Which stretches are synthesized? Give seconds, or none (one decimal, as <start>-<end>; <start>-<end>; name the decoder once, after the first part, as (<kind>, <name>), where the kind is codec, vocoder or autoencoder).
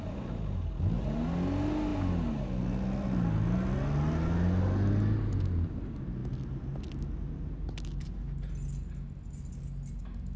none